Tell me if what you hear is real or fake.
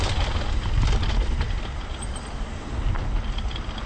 real